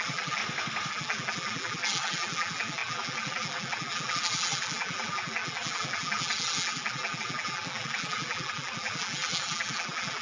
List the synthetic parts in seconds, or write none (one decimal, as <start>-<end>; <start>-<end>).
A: 0.0-0.4; 0.9-10.2